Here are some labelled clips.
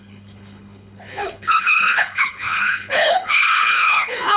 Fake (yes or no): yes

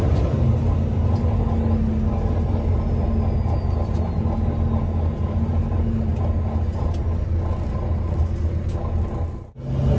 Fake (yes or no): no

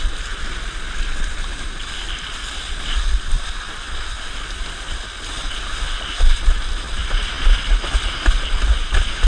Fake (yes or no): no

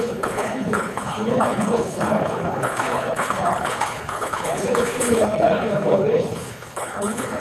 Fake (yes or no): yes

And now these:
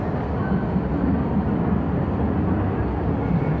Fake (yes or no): no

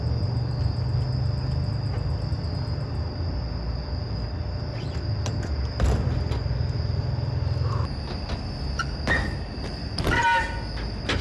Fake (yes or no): no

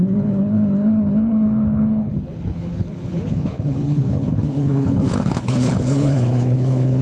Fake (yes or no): yes